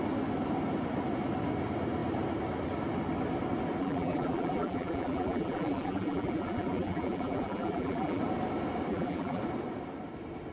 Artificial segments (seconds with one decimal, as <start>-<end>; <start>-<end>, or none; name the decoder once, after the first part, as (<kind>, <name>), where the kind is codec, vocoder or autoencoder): 3.8-8.2 (vocoder, BigVGAN v2); 8.9-9.4